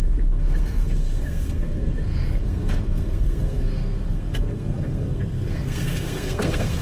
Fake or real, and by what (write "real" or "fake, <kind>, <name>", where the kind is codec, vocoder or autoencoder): fake, codec, SNAC